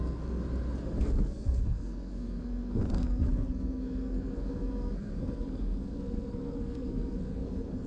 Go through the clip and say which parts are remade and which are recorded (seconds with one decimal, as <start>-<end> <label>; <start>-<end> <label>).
0.0-0.4 remade; 0.4-1.0 recorded; 1.0-7.9 remade